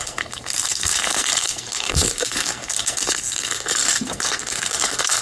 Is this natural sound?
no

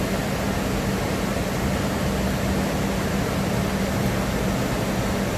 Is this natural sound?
yes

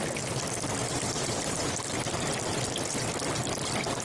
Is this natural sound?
yes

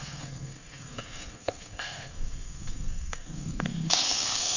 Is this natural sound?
no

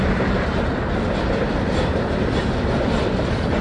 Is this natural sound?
yes